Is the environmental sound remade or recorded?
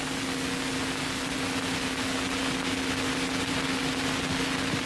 recorded